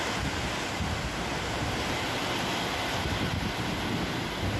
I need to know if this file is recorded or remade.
recorded